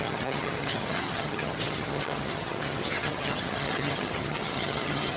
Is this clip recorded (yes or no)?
no